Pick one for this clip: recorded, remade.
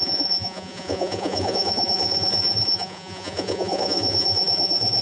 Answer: remade